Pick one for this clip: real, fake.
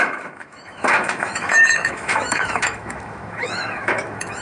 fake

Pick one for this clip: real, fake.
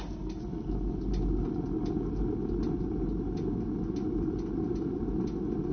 real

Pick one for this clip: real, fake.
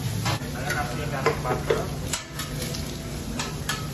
real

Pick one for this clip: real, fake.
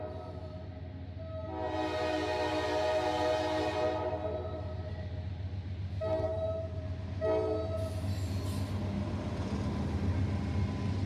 real